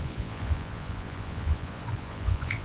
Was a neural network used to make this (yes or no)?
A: yes